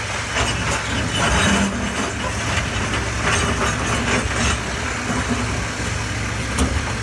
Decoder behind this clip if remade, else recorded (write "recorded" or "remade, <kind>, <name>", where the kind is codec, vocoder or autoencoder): recorded